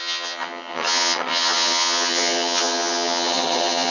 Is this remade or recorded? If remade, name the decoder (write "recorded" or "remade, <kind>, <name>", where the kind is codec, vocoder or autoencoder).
remade, vocoder, HiFi-GAN